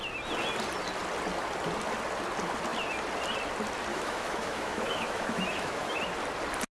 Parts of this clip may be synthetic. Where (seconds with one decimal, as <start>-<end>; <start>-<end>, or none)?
3.9-6.0